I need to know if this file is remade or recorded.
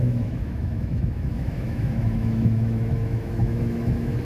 remade